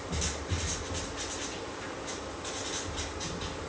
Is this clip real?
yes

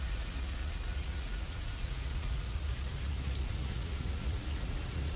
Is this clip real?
no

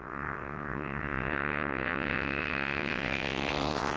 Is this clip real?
no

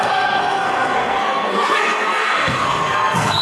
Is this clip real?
no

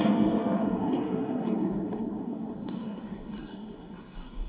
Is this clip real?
no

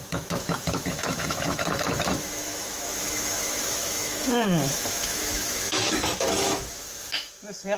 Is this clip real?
no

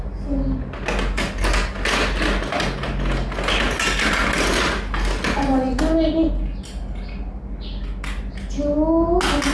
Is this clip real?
yes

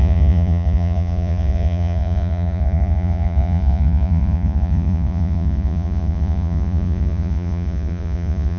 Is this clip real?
no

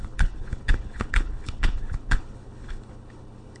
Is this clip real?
no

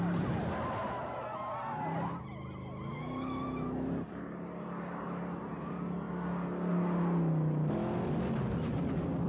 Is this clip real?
yes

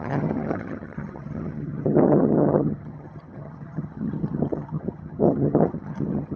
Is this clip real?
no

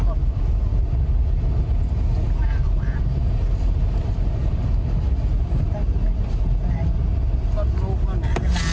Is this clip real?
yes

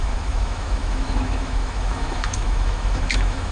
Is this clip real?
no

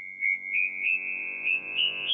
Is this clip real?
no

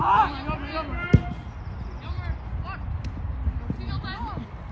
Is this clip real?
yes